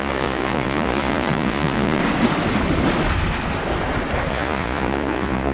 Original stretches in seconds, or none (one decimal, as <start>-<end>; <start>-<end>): 2.0-4.3